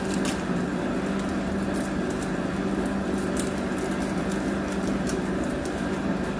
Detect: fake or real real